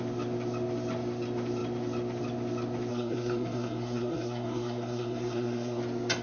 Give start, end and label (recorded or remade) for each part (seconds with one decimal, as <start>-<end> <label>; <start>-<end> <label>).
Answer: 0.0-2.9 recorded; 2.9-5.8 remade; 5.8-6.2 recorded